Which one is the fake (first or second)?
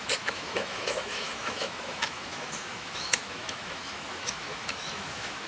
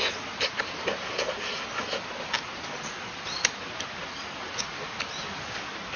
first